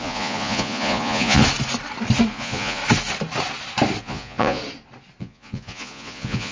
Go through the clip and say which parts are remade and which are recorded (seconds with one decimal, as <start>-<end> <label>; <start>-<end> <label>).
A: 0.0-1.4 remade; 1.4-2.3 recorded; 2.3-2.8 remade; 2.8-4.0 recorded; 4.0-4.6 remade; 4.6-5.2 recorded; 5.2-6.5 remade